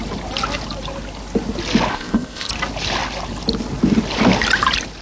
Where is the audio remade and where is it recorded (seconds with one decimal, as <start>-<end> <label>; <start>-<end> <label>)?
0.0-1.9 recorded; 1.9-2.5 remade; 2.5-5.0 recorded